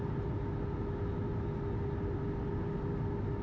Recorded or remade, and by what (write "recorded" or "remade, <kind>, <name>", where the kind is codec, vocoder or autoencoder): recorded